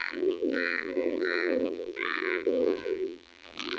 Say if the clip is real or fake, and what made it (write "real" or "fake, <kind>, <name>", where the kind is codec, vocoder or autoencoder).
fake, vocoder, BigVGAN v2